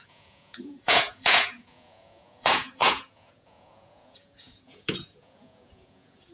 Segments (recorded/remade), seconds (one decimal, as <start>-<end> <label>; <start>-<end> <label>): 0.0-6.3 remade